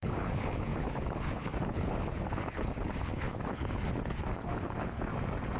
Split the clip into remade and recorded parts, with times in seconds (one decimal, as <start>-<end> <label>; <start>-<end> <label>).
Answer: 0.0-5.1 remade; 5.1-5.6 recorded